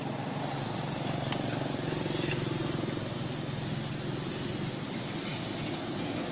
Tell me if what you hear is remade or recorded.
recorded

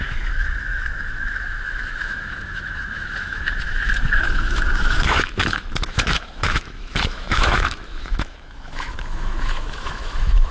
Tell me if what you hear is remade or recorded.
remade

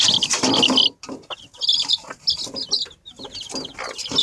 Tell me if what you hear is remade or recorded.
recorded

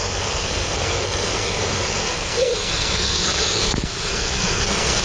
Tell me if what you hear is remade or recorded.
remade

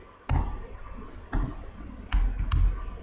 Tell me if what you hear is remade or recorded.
recorded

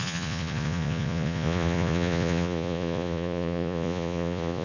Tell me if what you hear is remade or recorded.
remade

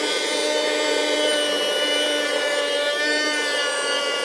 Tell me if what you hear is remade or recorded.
remade